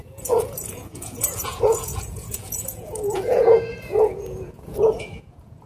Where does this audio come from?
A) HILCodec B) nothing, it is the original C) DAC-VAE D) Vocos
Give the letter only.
D